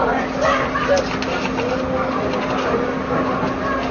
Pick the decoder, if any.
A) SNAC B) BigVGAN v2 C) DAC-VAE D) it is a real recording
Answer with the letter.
D